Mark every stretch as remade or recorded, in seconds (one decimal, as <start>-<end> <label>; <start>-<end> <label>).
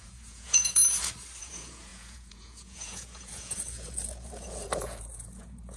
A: 0.0-0.8 remade; 0.8-1.4 recorded; 1.4-5.8 remade